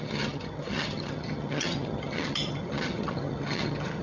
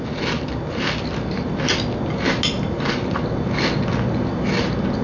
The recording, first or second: second